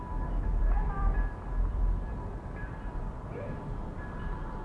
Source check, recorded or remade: remade